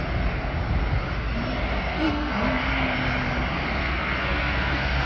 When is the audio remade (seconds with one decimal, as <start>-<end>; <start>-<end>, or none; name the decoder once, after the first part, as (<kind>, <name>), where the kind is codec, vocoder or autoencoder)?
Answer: 1.9-2.6 (codec, SNAC); 3.8-5.1